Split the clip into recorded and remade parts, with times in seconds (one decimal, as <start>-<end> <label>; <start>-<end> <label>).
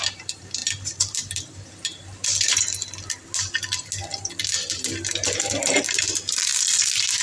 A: 0.0-7.2 recorded